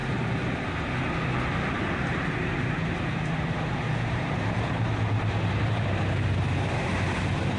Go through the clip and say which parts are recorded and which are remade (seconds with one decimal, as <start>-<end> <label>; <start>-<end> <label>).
0.0-0.7 remade; 0.7-1.8 recorded; 1.8-5.2 remade; 5.2-7.6 recorded